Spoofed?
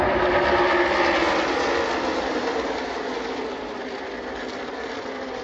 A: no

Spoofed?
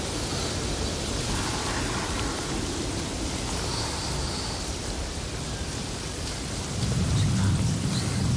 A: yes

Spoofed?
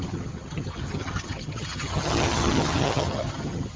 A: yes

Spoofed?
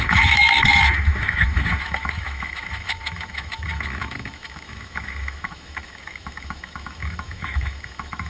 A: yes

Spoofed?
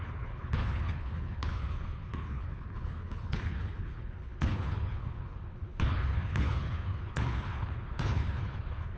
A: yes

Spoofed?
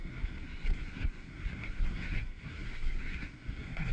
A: yes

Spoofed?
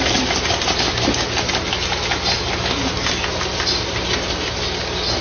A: no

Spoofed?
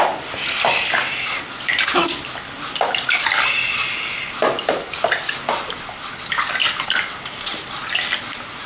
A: no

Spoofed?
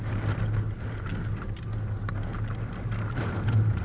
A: no